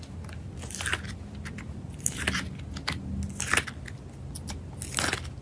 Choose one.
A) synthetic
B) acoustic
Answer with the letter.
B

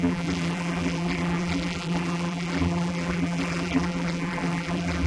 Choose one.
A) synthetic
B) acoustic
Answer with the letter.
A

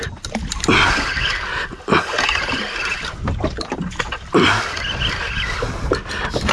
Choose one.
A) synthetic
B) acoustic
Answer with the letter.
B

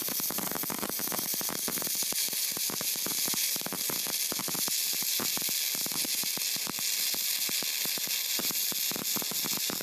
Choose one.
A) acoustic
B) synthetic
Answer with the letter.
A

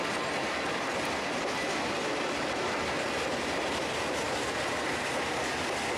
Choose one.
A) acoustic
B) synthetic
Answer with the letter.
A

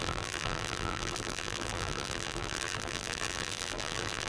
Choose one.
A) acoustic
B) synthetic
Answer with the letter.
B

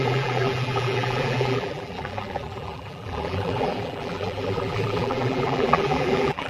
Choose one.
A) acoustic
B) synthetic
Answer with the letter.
B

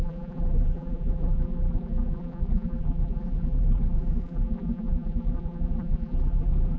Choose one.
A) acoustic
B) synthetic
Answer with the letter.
B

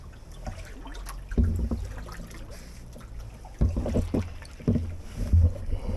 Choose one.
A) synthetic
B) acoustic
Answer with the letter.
B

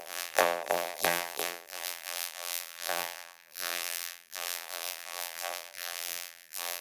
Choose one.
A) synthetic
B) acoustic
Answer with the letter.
A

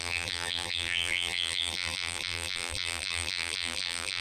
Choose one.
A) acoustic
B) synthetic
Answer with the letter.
B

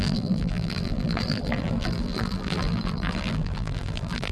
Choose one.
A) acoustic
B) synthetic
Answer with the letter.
B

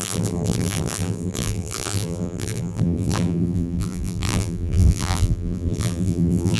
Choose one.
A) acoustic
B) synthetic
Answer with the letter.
B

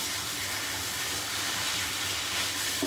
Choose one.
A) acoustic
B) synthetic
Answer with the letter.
B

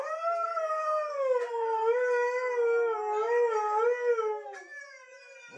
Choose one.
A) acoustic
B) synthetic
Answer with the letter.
A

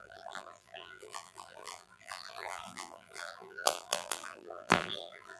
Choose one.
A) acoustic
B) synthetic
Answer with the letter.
B